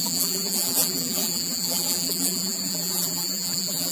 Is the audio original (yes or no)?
no